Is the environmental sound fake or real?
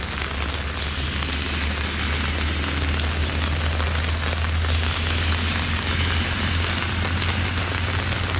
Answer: real